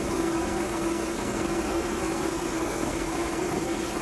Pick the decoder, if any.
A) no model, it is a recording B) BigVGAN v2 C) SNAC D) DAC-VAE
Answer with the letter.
C